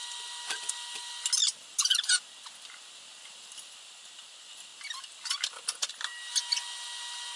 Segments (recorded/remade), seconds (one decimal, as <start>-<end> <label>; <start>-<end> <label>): 0.0-7.4 recorded